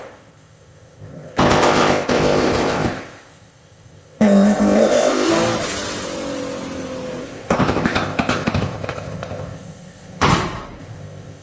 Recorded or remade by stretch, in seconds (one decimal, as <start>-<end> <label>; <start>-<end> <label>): 0.0-5.3 remade; 5.3-7.2 recorded; 7.2-10.3 remade; 10.3-10.8 recorded; 10.8-11.4 remade